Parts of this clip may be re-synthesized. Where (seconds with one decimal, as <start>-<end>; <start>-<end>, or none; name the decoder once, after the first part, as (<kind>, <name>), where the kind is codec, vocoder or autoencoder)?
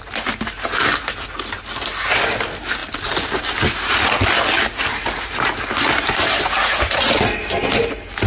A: none